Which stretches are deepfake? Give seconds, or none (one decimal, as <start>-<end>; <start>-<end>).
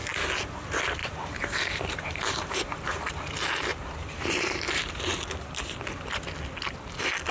1.0-3.1; 3.7-5.0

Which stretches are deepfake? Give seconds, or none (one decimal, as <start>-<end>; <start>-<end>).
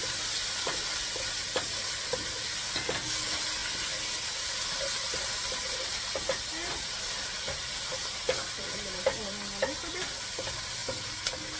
none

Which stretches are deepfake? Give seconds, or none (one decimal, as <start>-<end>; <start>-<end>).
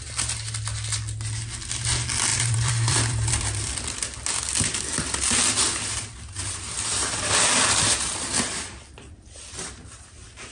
2.3-4.0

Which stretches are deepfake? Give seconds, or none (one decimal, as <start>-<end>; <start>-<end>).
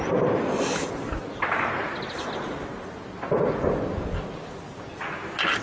none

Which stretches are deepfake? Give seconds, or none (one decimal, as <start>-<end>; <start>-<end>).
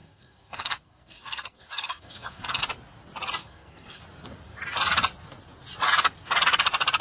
0.0-2.6; 3.4-4.0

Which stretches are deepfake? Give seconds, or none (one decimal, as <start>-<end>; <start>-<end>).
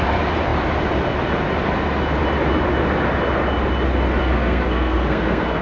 4.2-5.6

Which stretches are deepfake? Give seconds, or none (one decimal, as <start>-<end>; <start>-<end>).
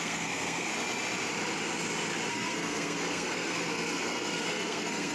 0.0-0.7; 2.3-5.1